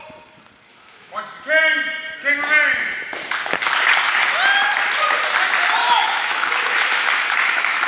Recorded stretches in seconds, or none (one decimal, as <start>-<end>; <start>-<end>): 0.0-0.7; 1.2-5.8